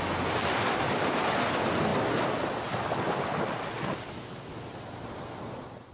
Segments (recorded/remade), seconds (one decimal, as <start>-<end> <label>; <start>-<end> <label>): 0.0-5.9 recorded